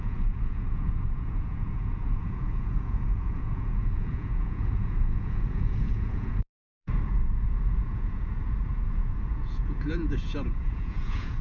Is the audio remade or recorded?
remade